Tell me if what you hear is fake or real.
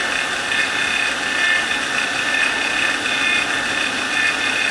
real